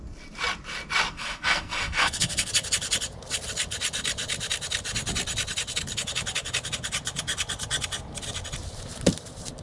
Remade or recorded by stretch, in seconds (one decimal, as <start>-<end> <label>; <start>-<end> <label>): 0.0-1.1 recorded; 1.1-2.5 remade; 2.5-9.6 recorded